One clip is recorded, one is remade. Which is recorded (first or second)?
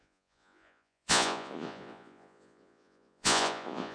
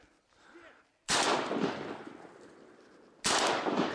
second